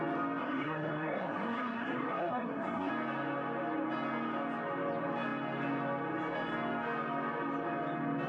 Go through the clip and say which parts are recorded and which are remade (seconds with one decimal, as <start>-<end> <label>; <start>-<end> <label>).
0.0-0.4 recorded; 0.4-2.9 remade; 2.9-8.3 recorded